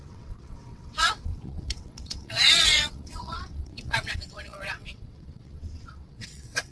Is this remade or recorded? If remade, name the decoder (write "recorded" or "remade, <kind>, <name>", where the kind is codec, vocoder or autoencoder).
remade, vocoder, WaveNeXt